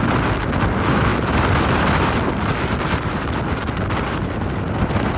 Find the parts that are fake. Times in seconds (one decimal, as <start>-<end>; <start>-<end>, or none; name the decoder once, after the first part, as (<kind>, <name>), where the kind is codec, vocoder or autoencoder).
none